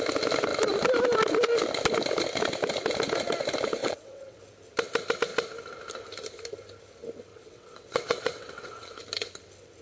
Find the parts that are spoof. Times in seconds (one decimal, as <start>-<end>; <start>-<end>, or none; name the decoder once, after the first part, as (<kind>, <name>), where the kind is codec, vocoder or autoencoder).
3.8-4.4 (vocoder, WaveNeXt); 7.3-9.0